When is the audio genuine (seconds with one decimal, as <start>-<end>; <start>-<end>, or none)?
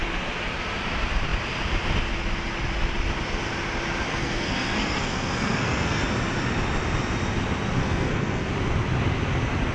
0.0-4.1; 6.0-7.8; 8.5-9.7